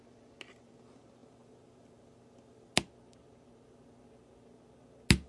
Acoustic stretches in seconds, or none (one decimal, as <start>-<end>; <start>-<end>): 0.0-5.3